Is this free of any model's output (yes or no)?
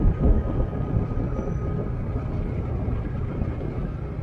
yes